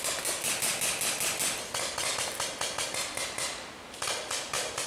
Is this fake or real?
real